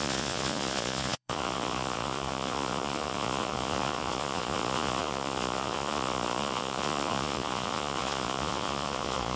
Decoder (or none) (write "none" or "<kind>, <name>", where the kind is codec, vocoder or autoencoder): vocoder, Vocos